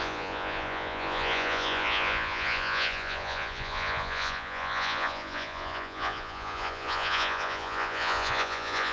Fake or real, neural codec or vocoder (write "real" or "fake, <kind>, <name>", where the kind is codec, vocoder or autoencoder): fake, vocoder, Vocos